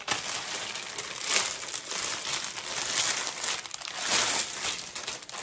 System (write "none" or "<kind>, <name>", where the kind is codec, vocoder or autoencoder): none